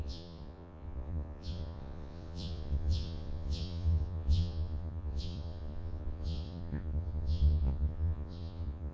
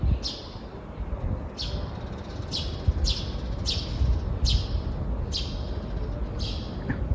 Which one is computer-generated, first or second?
first